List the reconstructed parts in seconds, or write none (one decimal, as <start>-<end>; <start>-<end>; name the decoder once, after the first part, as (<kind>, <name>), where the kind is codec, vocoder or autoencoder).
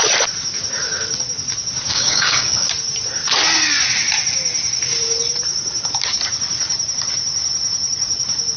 1.9-2.7 (codec, DAC)